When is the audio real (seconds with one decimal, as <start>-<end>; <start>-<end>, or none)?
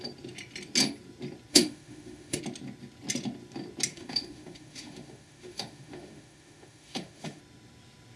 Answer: 0.0-1.5; 2.4-3.9; 7.4-8.2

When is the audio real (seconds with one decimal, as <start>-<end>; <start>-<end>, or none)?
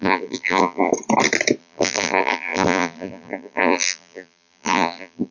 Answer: 0.9-1.6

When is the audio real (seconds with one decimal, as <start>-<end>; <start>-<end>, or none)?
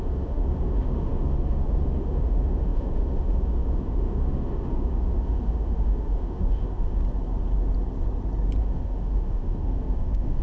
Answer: 7.0-8.6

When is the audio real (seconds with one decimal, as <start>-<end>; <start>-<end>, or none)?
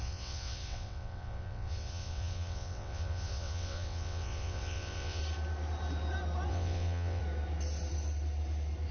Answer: 5.2-6.5; 7.2-8.9